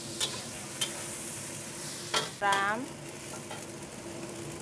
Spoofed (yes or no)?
no